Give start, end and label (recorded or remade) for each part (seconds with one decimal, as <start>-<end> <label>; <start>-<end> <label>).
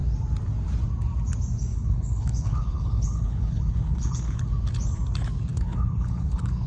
0.0-1.7 recorded; 1.7-4.4 remade; 4.4-5.5 recorded; 5.5-6.7 remade